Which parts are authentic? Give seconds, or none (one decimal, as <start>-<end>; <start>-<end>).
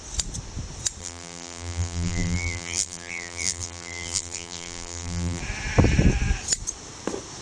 0.0-1.0; 5.4-7.4